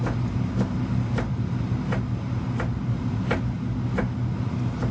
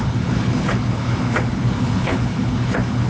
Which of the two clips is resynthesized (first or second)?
second